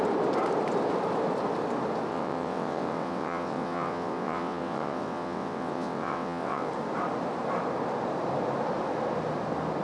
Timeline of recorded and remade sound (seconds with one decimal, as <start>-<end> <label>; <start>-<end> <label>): 0.0-2.1 recorded; 2.1-6.7 remade; 6.7-9.8 recorded